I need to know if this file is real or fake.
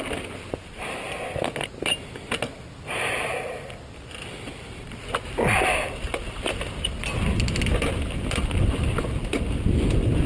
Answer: real